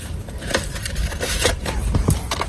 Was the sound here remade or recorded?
remade